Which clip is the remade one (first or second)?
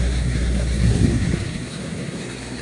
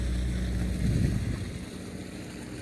first